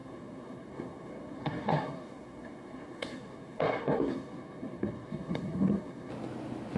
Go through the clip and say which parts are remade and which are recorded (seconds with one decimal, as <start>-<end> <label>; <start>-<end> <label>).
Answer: 0.0-6.1 remade; 6.1-6.8 recorded